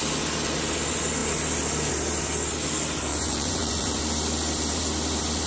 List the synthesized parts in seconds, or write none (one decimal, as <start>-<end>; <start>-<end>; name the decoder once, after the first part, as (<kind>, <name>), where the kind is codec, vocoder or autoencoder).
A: 3.1-4.0 (vocoder, Vocos)